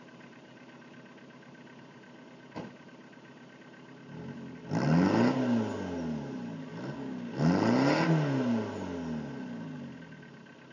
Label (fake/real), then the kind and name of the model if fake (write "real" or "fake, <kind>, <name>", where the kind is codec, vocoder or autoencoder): real